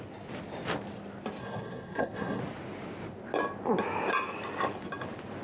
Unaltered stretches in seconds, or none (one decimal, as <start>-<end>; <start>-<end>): 0.0-1.4; 2.4-5.4

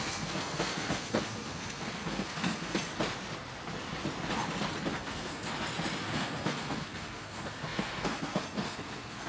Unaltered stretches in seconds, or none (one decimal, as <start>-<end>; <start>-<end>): 2.9-4.9; 5.5-6.0

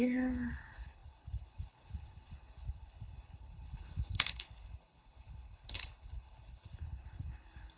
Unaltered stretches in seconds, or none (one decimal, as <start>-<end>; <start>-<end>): none

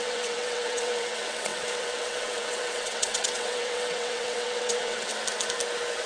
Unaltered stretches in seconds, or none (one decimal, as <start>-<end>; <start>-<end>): 5.1-6.1

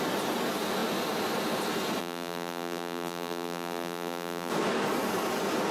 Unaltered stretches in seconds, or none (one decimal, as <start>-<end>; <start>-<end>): 0.0-2.0; 4.5-5.7

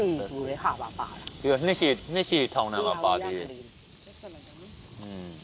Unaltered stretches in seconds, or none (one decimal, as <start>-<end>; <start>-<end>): 0.0-0.4; 3.6-5.4